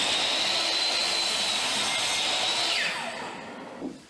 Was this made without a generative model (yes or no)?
yes